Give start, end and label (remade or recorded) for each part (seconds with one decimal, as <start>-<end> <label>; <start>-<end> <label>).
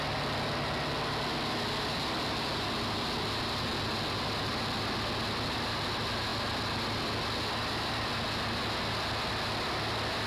0.0-10.3 recorded